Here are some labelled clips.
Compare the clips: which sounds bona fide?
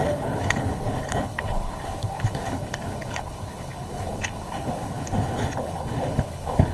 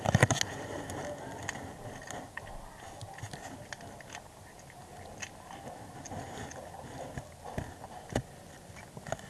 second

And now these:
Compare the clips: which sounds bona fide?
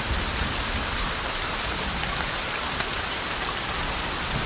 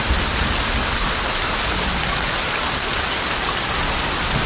second